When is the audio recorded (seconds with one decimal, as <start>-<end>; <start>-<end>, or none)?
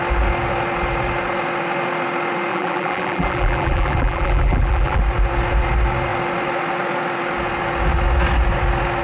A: 0.0-2.5; 5.0-9.0